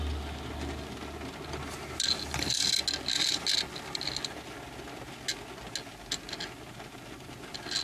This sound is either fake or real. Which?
real